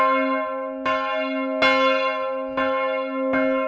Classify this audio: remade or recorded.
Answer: recorded